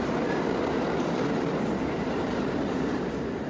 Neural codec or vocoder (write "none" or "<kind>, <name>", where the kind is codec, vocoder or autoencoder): none